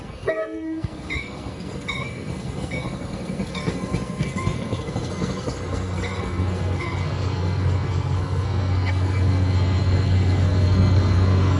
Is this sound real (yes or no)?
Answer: no